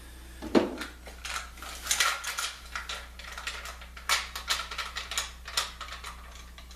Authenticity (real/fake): real